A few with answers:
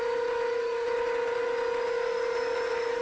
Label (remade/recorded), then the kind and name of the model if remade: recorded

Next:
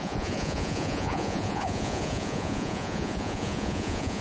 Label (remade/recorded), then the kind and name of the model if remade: remade, vocoder, Vocos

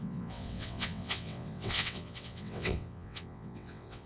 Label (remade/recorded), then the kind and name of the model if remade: remade, vocoder, WaveNeXt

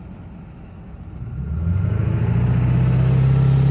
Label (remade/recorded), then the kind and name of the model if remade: recorded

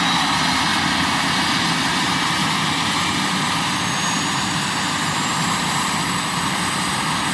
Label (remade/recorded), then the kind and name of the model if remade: recorded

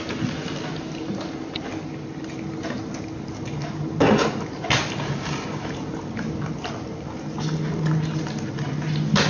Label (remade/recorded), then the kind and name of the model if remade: recorded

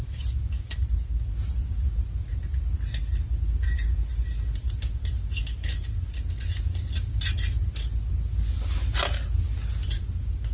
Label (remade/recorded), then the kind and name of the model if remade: recorded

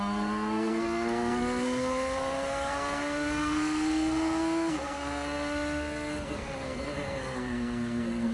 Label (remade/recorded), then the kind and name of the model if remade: remade, codec, SNAC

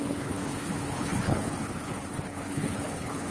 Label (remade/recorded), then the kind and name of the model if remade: remade, codec, HILCodec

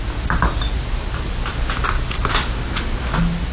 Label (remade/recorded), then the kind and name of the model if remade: recorded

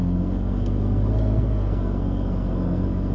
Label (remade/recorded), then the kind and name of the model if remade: remade, codec, SNAC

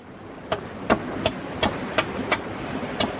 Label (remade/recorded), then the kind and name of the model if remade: recorded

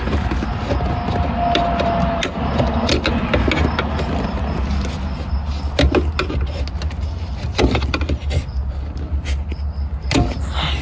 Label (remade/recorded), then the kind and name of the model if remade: recorded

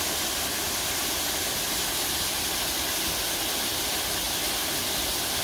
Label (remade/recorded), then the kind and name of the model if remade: recorded